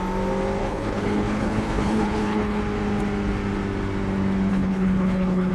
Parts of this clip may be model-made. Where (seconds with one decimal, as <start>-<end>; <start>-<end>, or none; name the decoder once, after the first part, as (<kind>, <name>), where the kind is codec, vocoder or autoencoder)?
0.6-2.6 (codec, HILCodec); 4.5-5.5